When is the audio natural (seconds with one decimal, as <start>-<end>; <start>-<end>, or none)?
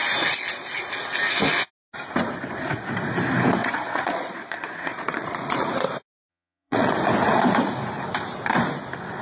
0.0-3.6; 5.7-6.3; 6.9-9.2